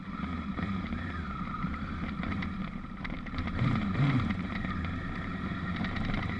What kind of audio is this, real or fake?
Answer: fake